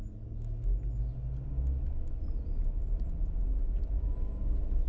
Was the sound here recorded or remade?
recorded